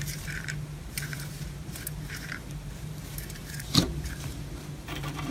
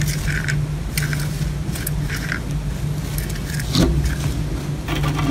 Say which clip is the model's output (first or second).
first